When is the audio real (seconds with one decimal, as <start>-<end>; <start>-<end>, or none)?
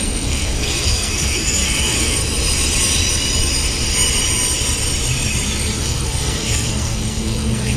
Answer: 2.2-5.8